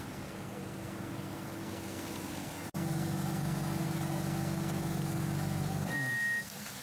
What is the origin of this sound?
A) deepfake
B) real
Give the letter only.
A